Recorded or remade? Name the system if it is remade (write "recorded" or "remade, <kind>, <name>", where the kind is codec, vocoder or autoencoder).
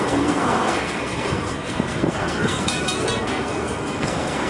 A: remade, codec, SNAC